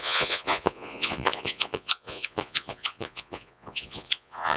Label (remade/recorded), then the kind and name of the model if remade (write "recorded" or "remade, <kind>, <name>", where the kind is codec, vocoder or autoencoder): remade, vocoder, Vocos